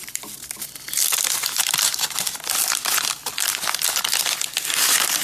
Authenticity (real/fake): real